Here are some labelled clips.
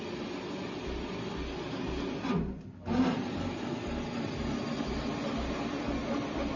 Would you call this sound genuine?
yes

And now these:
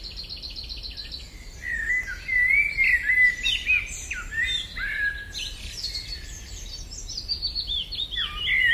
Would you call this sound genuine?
yes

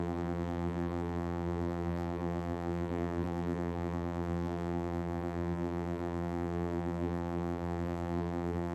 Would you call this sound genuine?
no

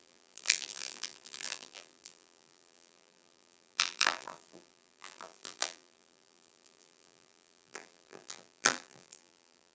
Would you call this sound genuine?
no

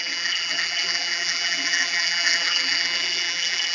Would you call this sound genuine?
no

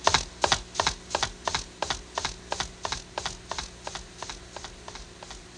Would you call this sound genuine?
yes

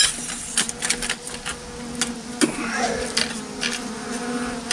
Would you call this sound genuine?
yes